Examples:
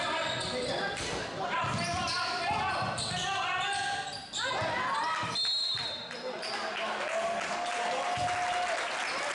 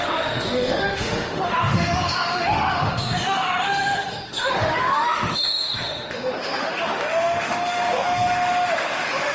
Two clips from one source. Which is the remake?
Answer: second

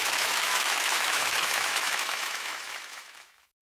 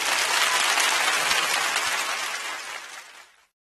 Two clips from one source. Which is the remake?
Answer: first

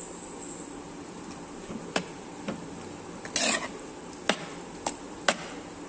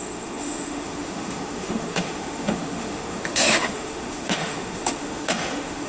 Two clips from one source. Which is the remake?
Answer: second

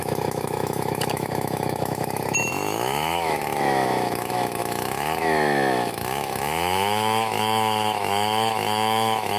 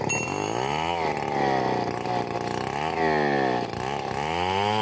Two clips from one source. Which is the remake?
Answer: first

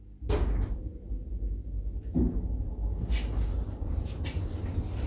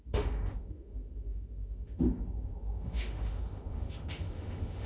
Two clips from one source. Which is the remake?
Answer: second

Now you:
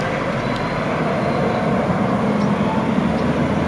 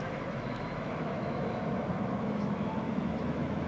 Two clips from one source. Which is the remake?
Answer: second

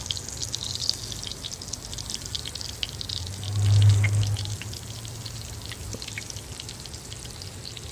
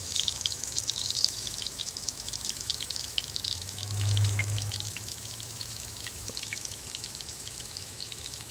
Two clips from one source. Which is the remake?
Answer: second